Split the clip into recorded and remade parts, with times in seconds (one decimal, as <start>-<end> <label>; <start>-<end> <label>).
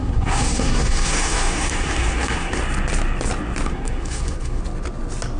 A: 0.0-2.6 remade; 2.6-3.7 recorded; 3.7-4.6 remade; 4.6-5.4 recorded